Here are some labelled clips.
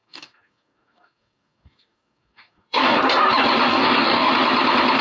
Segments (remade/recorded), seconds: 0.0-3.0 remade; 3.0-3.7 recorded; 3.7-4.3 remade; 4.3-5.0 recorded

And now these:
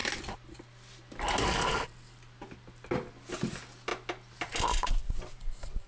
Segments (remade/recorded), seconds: 0.0-5.9 recorded

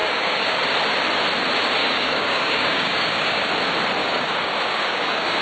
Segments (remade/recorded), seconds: 0.0-0.6 remade; 0.6-1.8 recorded; 1.8-3.5 remade; 3.5-4.0 recorded; 4.0-5.4 remade

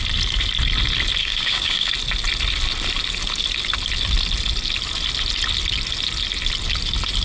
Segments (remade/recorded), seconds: 0.0-1.2 recorded; 1.2-1.9 remade; 1.9-7.2 recorded

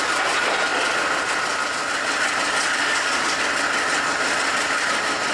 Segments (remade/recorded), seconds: 0.0-2.8 recorded; 2.8-3.4 remade; 3.4-5.3 recorded